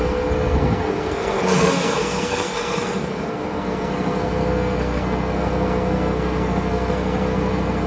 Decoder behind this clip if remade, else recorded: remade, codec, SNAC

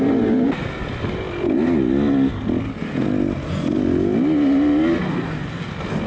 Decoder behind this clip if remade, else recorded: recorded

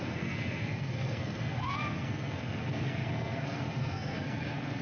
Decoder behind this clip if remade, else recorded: remade, codec, SNAC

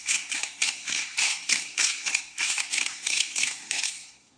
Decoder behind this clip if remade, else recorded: remade, codec, SNAC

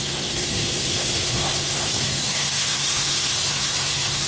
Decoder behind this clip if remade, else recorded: remade, codec, SNAC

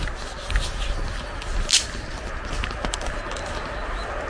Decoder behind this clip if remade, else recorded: recorded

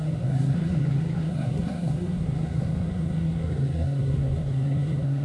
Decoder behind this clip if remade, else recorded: remade, codec, SNAC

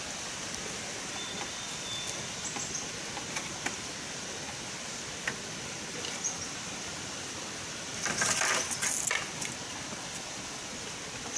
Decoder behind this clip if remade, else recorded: recorded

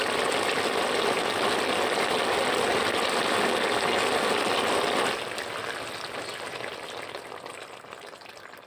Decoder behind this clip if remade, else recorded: recorded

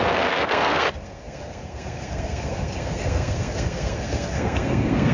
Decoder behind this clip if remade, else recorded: remade, codec, SNAC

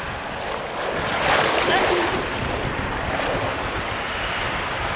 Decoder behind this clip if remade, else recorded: recorded